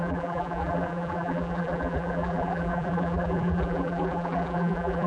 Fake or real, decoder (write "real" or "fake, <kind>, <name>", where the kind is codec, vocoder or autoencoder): fake, vocoder, BigVGAN v2